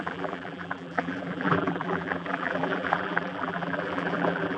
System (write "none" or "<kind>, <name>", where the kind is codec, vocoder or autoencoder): vocoder, BigVGAN v2